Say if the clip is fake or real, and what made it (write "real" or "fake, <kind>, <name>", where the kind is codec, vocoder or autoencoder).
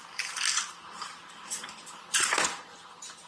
real